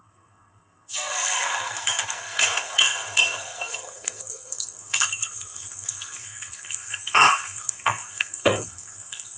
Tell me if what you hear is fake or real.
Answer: fake